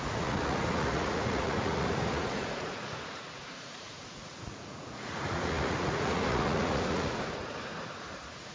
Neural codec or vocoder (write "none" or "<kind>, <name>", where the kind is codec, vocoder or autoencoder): vocoder, Vocos